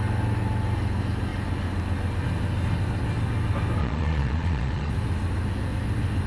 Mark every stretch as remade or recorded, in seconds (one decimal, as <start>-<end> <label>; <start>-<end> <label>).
0.0-3.8 recorded; 3.8-4.9 remade; 4.9-6.3 recorded